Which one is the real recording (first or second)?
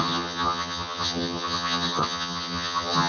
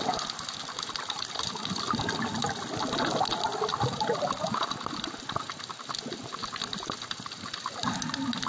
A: second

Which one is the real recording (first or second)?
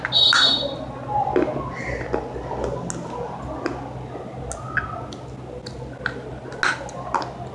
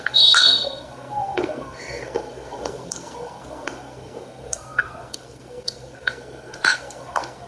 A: first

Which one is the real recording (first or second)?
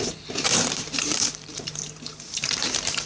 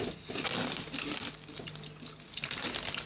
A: second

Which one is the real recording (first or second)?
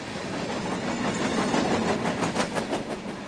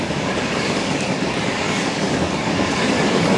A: first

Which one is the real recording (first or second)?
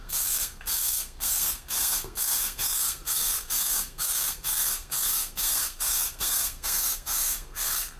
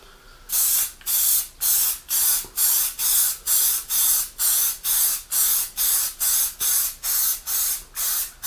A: second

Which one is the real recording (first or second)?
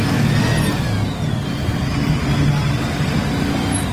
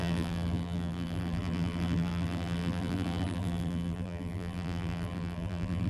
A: first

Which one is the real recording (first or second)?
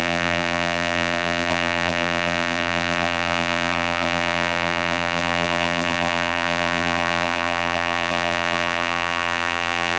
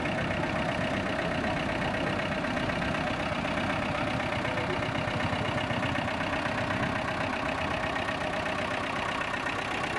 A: second